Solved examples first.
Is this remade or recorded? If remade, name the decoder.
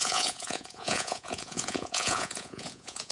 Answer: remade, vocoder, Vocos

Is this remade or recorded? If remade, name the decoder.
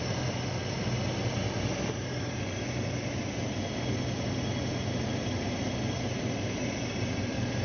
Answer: recorded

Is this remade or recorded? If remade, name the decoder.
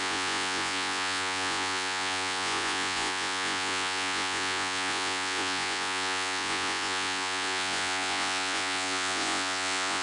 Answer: remade, vocoder, Vocos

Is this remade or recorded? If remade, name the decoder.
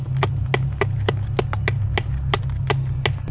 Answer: recorded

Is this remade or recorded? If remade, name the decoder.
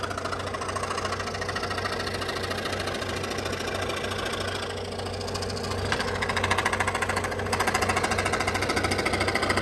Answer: recorded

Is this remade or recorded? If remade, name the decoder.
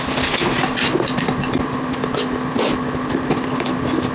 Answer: recorded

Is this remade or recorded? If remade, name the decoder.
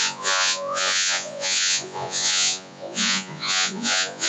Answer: remade, vocoder, Vocos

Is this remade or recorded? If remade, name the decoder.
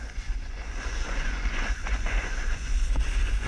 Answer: remade, vocoder, Vocos